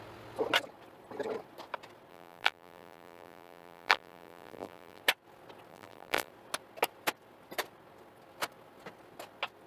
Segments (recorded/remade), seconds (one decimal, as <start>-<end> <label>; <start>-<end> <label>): 0.0-2.1 recorded; 2.1-5.0 remade; 5.0-5.7 recorded; 5.7-6.3 remade; 6.3-9.7 recorded